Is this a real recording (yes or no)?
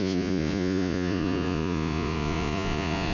no